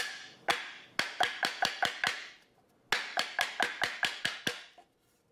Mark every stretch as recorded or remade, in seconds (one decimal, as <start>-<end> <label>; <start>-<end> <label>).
0.0-5.3 recorded

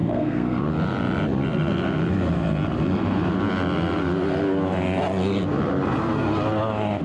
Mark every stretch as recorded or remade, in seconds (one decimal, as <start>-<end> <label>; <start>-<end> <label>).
0.0-0.6 remade; 0.6-7.0 recorded

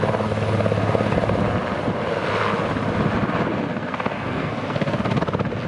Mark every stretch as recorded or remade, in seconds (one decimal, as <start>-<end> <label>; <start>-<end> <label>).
0.0-3.7 recorded; 3.7-5.2 remade; 5.2-5.7 recorded

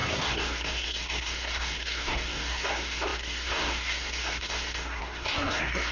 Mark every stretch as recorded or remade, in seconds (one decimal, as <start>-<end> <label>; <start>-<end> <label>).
0.0-5.9 remade

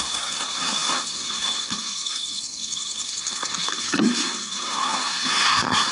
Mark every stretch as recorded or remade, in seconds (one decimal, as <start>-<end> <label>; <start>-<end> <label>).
0.0-5.9 remade

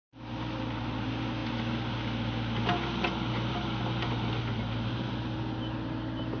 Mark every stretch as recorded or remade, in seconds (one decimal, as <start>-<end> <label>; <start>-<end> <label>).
0.0-6.4 recorded

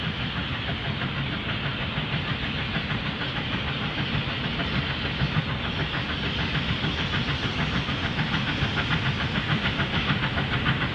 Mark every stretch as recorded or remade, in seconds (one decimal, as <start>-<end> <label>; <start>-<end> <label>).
0.0-10.9 recorded